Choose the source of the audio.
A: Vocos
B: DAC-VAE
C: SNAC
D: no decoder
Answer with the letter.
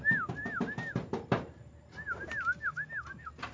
D